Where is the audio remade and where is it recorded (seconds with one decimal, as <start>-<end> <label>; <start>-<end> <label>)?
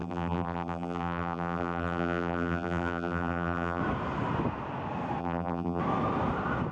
0.0-3.8 remade; 3.8-5.2 recorded; 5.2-5.8 remade; 5.8-6.7 recorded